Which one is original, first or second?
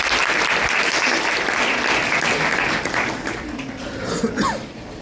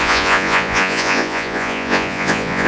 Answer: first